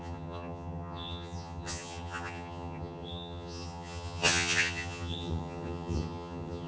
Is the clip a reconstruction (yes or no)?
yes